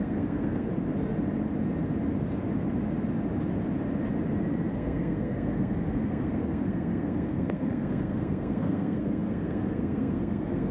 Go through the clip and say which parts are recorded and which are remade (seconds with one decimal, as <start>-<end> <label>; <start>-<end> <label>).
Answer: 0.0-0.7 remade; 0.7-4.7 recorded; 4.7-10.7 remade